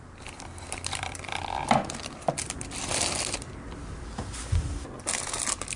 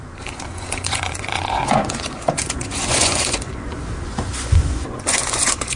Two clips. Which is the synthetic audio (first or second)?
second